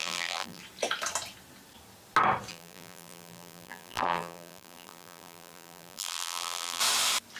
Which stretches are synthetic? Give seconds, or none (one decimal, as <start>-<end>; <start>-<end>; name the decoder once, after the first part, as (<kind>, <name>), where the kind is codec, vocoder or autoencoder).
0.0-0.6 (vocoder, BigVGAN v2); 2.5-6.8